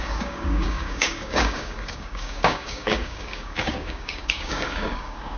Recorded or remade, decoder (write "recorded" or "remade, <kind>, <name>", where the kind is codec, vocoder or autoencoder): remade, codec, DAC